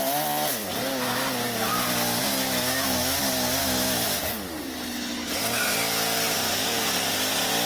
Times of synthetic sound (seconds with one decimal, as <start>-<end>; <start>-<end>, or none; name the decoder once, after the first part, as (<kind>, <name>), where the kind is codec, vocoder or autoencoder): 2.2-3.2 (autoencoder, DAC-VAE); 3.6-4.2